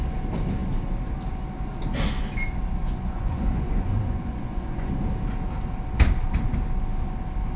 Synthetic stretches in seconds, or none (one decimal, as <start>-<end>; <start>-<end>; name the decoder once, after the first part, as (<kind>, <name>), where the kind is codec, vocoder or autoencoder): 2.8-4.9 (vocoder, Vocos)